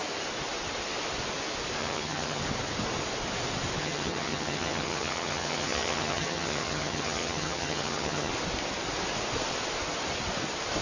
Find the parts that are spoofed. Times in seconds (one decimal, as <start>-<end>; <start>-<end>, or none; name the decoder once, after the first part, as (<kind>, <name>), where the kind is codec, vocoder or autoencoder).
1.8-2.4 (vocoder, HiFi-GAN); 3.8-8.3